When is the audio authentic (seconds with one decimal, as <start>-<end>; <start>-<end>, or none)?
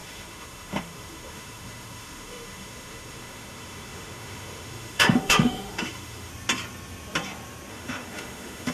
6.3-7.7